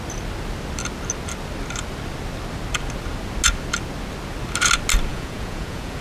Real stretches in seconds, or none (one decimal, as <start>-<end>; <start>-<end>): 0.0-5.1